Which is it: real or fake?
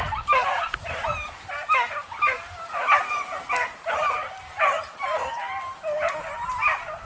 real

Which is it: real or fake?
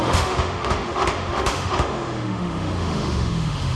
fake